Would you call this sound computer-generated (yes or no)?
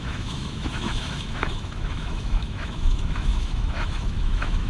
yes